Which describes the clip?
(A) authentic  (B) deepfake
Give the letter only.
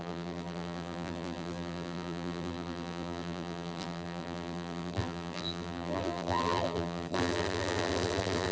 B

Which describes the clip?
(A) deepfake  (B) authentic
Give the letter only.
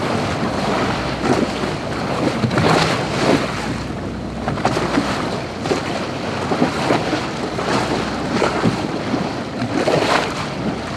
B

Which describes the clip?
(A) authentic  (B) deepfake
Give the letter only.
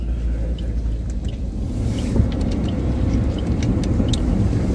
A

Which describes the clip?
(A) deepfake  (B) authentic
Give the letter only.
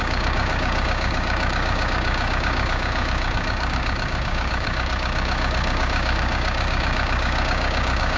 A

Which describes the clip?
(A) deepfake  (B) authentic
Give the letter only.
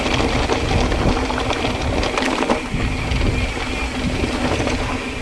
B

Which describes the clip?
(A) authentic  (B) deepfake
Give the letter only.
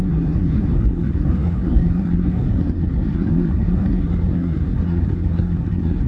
B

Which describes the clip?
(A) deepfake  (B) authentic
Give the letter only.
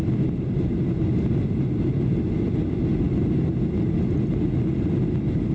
B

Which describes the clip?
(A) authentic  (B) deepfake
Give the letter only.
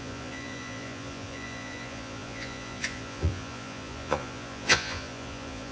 B